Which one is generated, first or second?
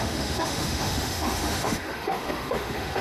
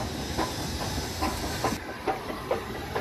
first